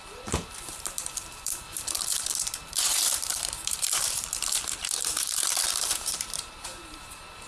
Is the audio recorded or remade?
remade